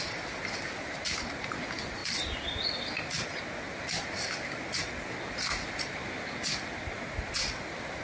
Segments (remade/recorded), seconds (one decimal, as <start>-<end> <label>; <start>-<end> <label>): 0.0-8.0 recorded